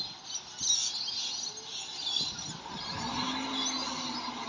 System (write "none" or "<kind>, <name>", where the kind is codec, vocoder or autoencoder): none